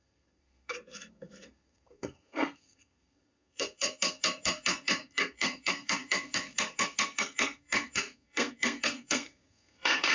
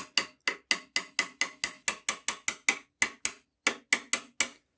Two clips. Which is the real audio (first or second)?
second